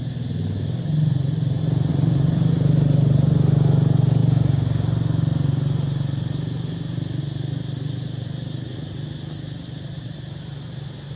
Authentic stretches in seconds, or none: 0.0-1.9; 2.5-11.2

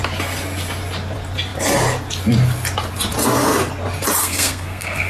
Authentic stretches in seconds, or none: 0.0-4.2

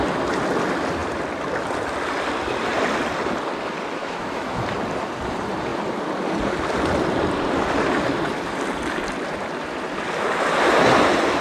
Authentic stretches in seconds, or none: 0.0-4.0; 4.6-11.4

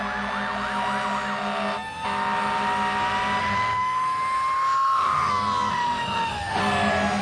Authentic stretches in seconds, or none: 0.0-3.4; 5.3-5.7; 6.6-7.2

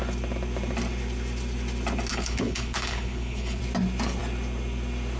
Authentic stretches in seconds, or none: 0.0-2.1; 3.6-5.2

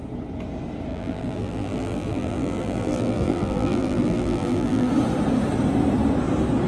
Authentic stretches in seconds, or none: 0.0-0.9; 4.9-6.7

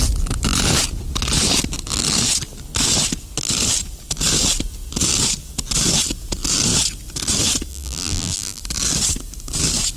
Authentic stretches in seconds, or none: 0.0-7.7; 8.6-10.0